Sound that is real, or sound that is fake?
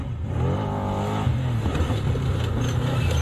real